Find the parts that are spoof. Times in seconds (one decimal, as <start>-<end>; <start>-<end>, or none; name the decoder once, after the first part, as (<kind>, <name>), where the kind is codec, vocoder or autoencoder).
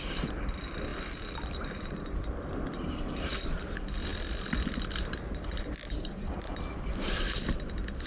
none